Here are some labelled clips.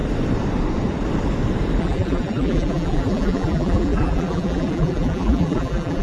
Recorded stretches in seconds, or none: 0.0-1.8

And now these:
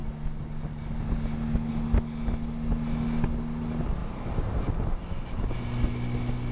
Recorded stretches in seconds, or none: 0.0-6.5

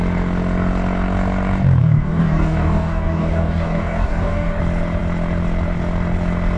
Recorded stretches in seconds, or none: 0.0-1.8; 4.6-6.6